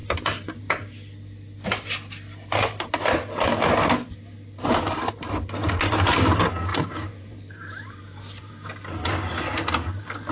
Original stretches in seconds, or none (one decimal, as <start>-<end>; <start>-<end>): 0.7-6.7; 8.5-10.3